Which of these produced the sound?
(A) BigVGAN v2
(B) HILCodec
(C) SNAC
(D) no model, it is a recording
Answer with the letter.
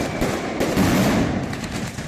D